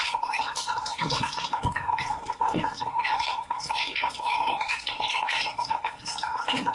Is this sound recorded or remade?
remade